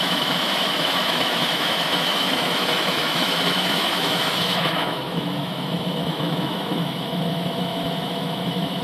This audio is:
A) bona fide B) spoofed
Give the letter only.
B